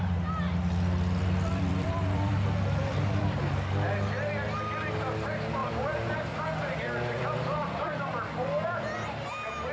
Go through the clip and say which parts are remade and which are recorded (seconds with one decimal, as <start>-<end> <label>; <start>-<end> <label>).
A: 0.0-1.5 recorded; 1.5-3.5 remade; 3.5-5.6 recorded; 5.6-7.8 remade; 7.8-9.7 recorded